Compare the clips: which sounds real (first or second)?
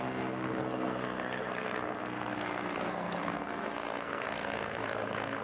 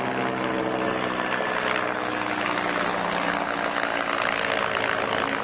second